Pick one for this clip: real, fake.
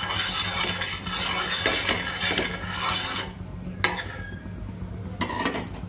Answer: real